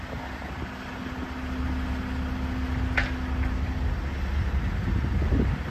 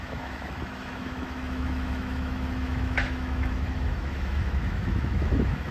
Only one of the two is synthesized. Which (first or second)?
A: second